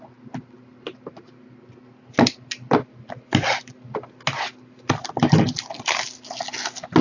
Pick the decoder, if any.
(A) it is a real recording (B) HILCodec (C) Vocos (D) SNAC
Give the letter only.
A